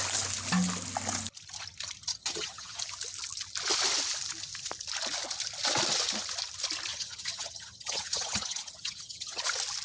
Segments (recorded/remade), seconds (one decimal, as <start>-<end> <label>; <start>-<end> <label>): 0.0-2.1 recorded; 2.1-2.8 remade; 2.8-6.9 recorded; 6.9-9.4 remade; 9.4-9.8 recorded